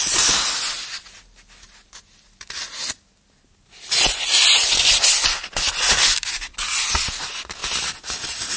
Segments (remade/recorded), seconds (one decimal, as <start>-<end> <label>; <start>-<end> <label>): 0.0-8.6 recorded